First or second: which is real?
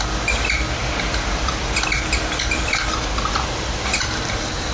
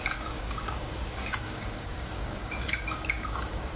first